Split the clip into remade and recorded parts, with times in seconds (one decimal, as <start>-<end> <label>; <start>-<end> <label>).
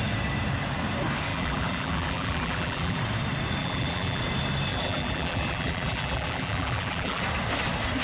0.0-1.3 recorded; 1.3-3.0 remade; 3.0-3.6 recorded; 3.6-4.2 remade; 4.2-4.7 recorded; 4.7-7.2 remade; 7.2-8.0 recorded